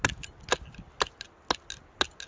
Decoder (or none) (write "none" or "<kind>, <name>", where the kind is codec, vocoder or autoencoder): none